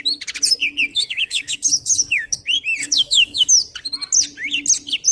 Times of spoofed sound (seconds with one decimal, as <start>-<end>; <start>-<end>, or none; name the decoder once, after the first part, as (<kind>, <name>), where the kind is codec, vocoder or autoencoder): 0.9-2.4 (codec, DAC); 2.8-3.5